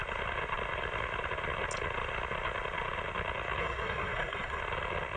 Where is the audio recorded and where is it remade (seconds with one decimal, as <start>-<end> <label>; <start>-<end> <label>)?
0.0-3.6 recorded; 3.6-4.6 remade; 4.6-5.2 recorded